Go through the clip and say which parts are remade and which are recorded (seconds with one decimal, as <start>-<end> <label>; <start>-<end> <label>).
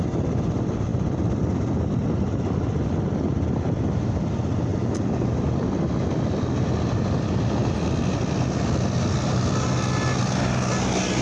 0.0-11.2 recorded